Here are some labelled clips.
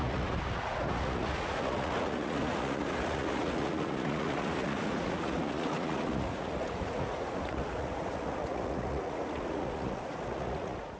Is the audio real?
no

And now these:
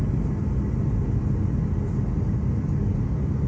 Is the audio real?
yes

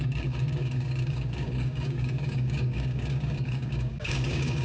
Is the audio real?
no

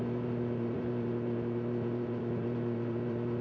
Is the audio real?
no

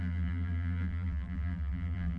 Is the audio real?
no